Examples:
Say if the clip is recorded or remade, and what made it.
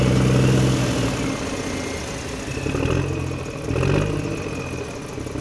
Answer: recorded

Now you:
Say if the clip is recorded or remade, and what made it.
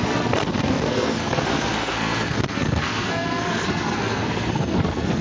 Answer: remade, codec, SNAC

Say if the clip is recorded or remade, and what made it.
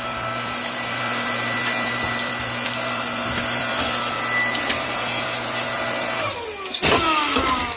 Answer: recorded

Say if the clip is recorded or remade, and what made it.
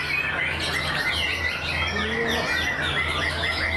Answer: recorded